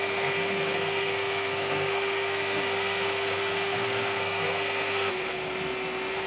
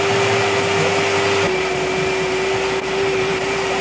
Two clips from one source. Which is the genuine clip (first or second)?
second